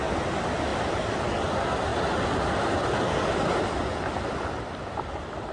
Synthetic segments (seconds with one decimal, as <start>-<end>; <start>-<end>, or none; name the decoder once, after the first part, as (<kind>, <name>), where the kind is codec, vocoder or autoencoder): 0.7-1.4 (vocoder, BigVGAN v2); 1.9-5.5